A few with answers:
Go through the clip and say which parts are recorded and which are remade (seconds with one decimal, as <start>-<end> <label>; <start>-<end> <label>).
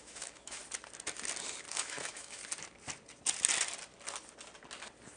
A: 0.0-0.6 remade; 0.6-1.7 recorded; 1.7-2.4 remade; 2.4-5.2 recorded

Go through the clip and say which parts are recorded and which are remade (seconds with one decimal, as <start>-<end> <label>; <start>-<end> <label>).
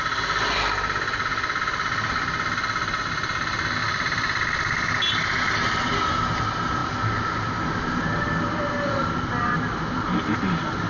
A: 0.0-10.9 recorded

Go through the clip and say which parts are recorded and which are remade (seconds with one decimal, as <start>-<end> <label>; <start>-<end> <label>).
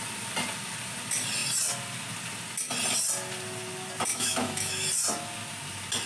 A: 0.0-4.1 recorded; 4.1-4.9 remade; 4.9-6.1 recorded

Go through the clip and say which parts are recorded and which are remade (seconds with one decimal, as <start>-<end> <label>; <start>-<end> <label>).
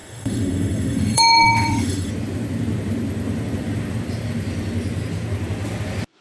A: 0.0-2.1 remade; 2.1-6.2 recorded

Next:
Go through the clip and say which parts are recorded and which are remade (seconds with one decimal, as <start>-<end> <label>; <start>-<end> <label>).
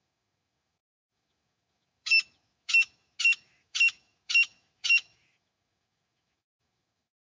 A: 0.0-7.2 remade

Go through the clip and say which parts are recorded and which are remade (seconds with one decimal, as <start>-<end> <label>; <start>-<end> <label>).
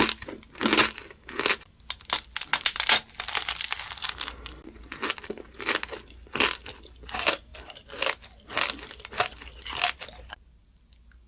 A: 0.0-11.3 recorded